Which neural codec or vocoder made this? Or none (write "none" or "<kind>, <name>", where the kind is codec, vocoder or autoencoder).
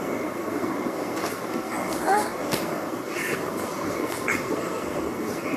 codec, SNAC